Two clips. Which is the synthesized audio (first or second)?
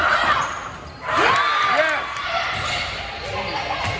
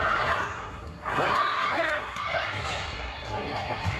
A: second